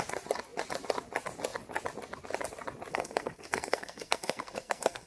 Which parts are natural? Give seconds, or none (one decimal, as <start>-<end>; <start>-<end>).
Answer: 0.0-2.9